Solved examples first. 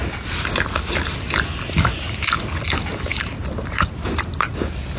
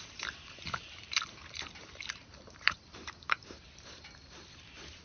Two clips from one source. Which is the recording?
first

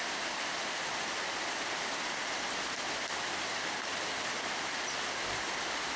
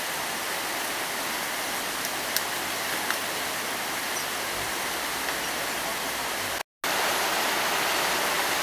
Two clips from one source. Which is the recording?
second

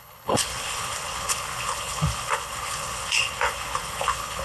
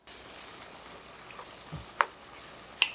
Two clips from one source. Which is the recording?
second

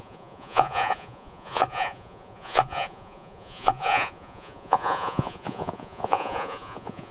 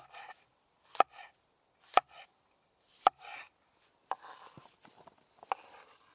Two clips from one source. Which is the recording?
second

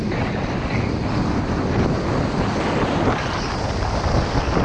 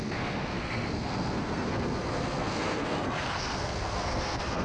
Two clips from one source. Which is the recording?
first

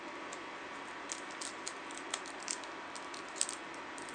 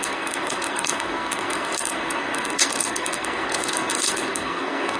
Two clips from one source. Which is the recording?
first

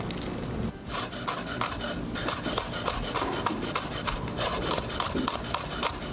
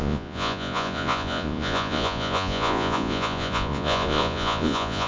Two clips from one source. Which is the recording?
first